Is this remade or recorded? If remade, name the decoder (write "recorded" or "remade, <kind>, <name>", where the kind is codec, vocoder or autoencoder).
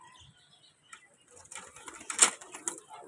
recorded